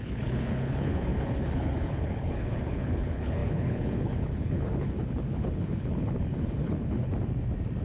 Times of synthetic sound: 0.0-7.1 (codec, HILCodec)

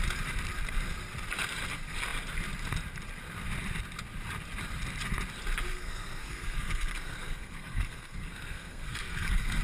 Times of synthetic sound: 5.7-9.6 (codec, SNAC)

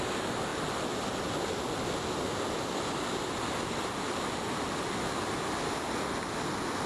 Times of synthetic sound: none

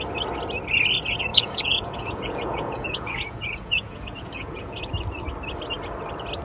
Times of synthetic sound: 1.3-4.9 (vocoder, Vocos)

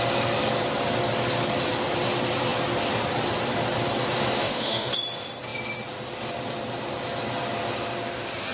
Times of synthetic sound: 4.4-4.9 (autoencoder, DAC-VAE)

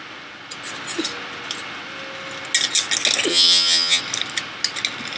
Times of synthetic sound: 3.3-4.0 (vocoder, HiFi-GAN)

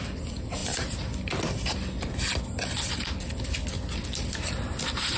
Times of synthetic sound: none